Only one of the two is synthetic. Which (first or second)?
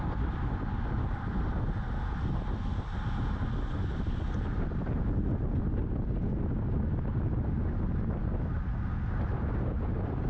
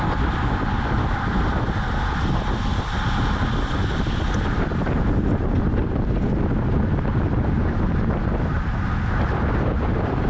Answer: second